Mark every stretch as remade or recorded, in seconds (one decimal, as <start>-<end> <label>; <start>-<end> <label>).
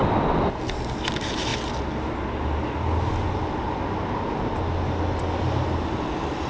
0.0-6.5 recorded